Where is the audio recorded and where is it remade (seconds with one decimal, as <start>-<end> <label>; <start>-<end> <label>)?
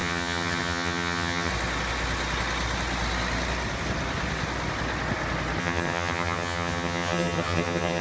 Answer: 0.0-1.5 remade; 1.5-5.6 recorded; 5.6-8.0 remade